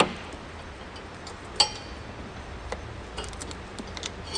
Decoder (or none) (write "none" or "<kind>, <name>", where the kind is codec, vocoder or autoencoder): none